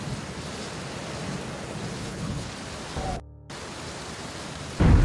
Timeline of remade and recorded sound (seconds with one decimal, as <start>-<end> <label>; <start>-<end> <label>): 0.0-2.0 recorded; 2.0-2.5 remade; 2.5-5.0 recorded